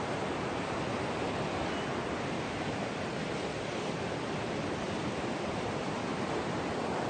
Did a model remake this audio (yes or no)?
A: yes